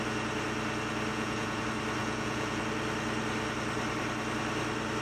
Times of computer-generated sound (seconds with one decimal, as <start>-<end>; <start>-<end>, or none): 1.1-1.6; 2.0-2.6